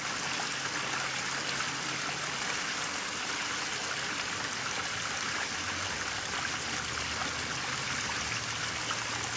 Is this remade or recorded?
recorded